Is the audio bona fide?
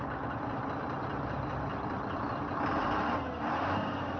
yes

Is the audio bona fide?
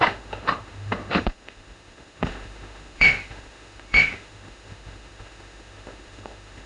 no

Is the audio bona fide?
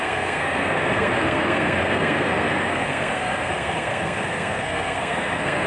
no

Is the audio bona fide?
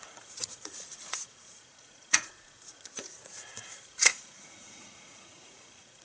no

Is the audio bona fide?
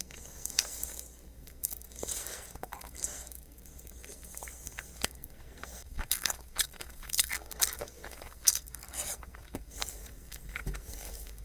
no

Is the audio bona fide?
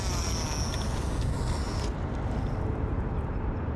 yes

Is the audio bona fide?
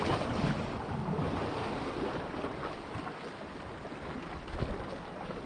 yes